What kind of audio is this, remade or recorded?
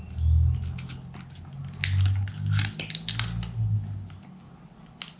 recorded